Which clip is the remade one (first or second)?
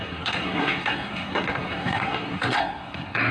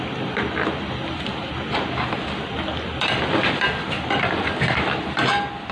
first